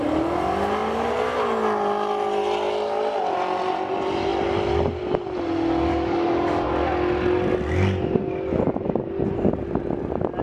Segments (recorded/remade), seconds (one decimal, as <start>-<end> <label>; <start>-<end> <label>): 0.0-5.9 recorded; 5.9-6.7 remade; 6.7-10.4 recorded

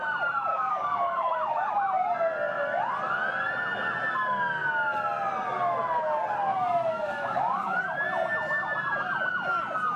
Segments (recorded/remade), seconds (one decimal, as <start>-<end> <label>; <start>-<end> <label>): 0.0-0.5 recorded; 0.5-1.7 remade; 1.7-6.9 recorded; 6.9-7.8 remade; 7.8-10.0 recorded

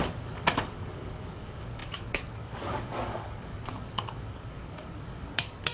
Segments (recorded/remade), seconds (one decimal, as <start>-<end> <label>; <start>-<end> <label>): 0.0-5.7 remade

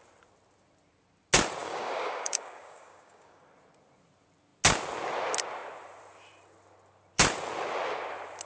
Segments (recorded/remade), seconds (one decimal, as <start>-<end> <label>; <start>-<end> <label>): 0.0-1.6 recorded; 1.6-3.4 remade; 3.4-8.5 recorded

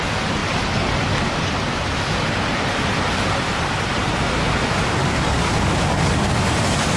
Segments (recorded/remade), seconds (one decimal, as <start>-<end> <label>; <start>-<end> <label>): 0.0-5.0 recorded; 5.0-6.4 remade; 6.4-7.0 recorded

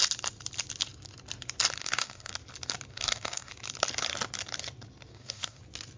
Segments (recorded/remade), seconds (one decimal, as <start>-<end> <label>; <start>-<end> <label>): 0.0-1.8 recorded; 1.8-2.3 remade; 2.3-2.9 recorded; 2.9-3.5 remade; 3.5-5.1 recorded; 5.1-5.6 remade; 5.6-6.0 recorded